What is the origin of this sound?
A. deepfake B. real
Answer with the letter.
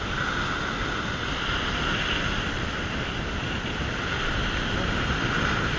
B